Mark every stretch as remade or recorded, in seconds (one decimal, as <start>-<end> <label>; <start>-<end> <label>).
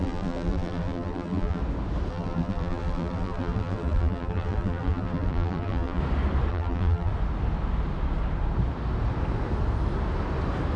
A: 0.0-1.6 remade; 1.6-2.1 recorded; 2.1-6.0 remade; 6.0-6.5 recorded; 6.5-7.1 remade; 7.1-10.8 recorded